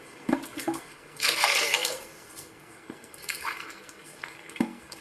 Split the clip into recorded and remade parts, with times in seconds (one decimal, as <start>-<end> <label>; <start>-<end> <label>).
0.0-5.0 remade